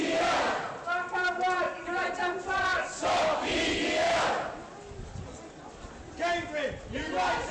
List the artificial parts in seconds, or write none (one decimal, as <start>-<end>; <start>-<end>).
none